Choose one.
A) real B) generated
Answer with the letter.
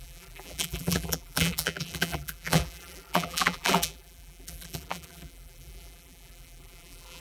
B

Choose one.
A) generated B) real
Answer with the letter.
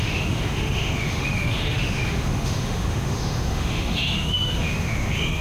A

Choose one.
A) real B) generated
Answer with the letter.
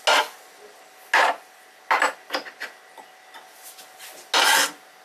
A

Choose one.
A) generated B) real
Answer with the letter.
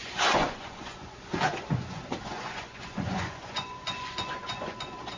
A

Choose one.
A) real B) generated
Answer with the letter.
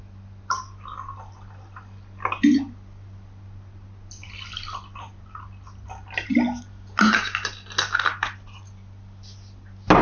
A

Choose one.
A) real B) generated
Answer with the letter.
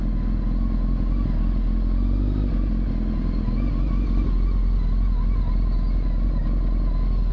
A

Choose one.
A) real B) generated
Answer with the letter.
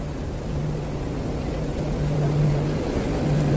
A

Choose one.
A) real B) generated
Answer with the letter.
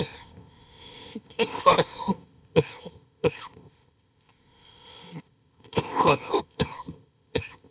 B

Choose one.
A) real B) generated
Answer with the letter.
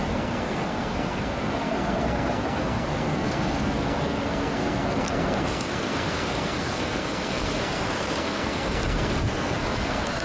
B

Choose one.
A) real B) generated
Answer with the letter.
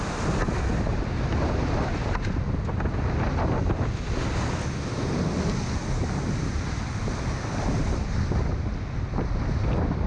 A